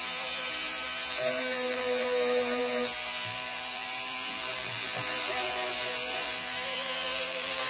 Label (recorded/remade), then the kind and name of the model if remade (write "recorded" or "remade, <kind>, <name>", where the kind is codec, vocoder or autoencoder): remade, vocoder, BigVGAN v2